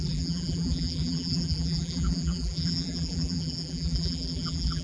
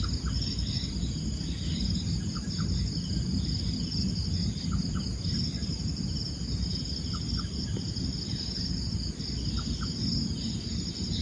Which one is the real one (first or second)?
second